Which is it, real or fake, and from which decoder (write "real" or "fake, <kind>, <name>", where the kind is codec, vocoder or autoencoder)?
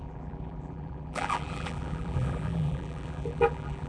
fake, vocoder, BigVGAN v2